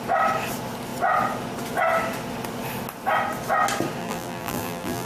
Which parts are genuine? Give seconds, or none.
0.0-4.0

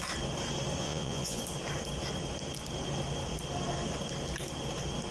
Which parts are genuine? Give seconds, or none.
0.0-0.8; 1.4-5.1

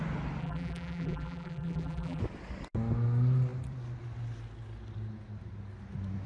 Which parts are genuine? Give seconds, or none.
0.0-0.4; 2.2-6.3

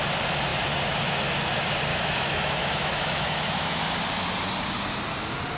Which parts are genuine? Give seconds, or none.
0.0-1.9; 3.8-5.6

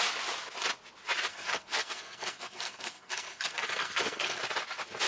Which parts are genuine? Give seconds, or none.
0.0-1.3; 4.4-5.1